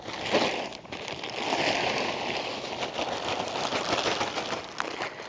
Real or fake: real